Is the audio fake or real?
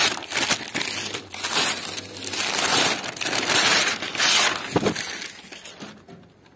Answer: real